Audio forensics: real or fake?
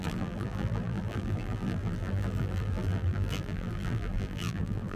fake